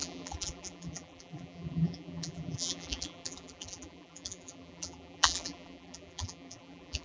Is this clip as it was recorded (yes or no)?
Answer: no